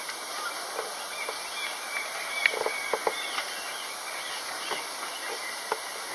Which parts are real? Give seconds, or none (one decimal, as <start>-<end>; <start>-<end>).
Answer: 0.0-6.1